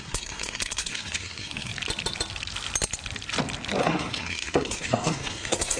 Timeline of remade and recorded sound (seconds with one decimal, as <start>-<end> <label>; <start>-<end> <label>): 0.0-1.7 remade; 1.7-3.8 recorded; 3.8-5.8 remade

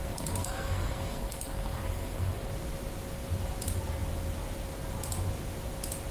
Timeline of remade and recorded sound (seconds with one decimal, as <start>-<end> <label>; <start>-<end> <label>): 0.0-2.5 remade; 2.5-6.1 recorded

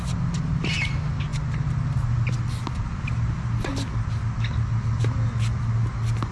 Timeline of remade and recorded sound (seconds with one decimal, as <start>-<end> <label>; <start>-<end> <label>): 0.0-6.3 recorded

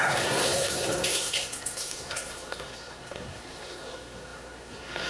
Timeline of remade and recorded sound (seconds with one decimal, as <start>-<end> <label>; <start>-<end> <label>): 0.0-5.1 remade

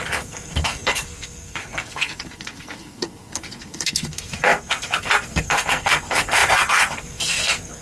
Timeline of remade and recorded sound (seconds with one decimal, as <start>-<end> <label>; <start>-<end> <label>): 0.0-7.8 remade

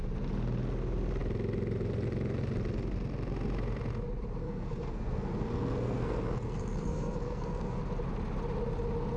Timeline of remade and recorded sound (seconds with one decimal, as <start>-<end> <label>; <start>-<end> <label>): 0.0-4.4 recorded; 4.4-7.8 remade; 7.8-9.2 recorded

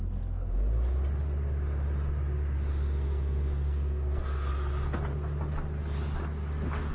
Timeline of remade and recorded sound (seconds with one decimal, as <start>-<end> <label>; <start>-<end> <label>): 0.0-2.7 recorded; 2.7-4.5 remade; 4.5-6.9 recorded